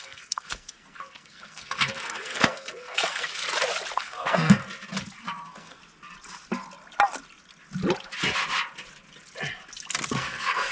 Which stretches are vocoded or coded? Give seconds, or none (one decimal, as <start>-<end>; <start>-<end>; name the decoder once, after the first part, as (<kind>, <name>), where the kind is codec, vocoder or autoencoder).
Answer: 0.0-3.4 (codec, SNAC); 3.9-4.6; 5.2-5.8; 10.1-10.7